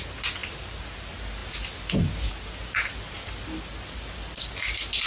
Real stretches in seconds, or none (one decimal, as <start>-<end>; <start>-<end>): 0.0-5.1